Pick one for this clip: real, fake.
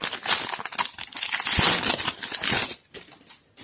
real